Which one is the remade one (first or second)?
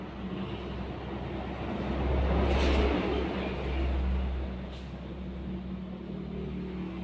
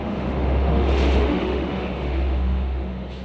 second